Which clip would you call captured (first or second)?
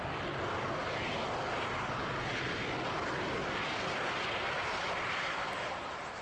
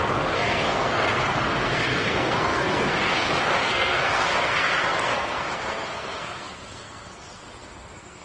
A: first